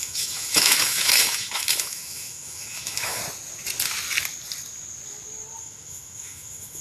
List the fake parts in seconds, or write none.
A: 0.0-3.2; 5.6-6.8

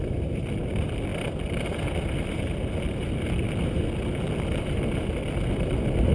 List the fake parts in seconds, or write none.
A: none

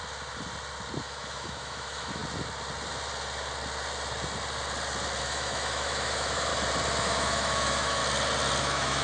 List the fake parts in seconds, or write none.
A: 1.0-2.2; 5.2-6.5; 7.0-8.0; 8.6-9.0

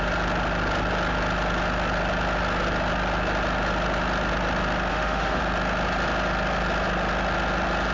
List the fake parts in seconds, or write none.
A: 4.9-5.4